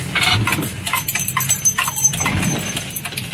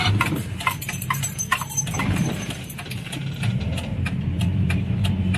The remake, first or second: second